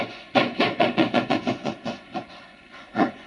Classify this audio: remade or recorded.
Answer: remade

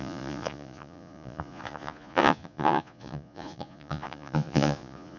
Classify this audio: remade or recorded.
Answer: remade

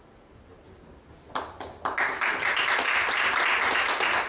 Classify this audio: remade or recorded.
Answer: recorded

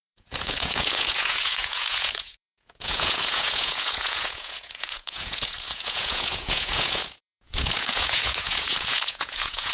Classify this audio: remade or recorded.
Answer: remade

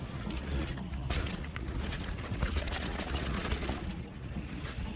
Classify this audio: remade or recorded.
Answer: remade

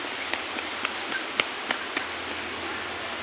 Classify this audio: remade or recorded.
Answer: recorded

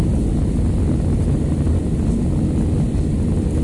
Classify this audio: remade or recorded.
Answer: recorded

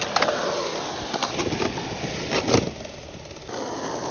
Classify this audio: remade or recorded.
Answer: recorded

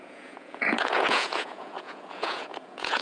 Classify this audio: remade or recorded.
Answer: remade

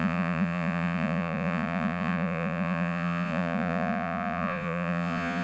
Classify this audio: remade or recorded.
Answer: remade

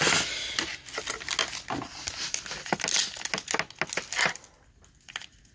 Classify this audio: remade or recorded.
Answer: recorded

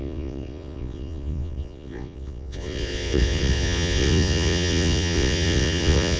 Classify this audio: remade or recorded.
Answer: remade